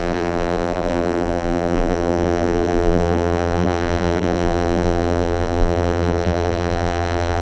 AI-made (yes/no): yes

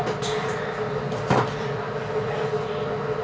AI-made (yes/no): no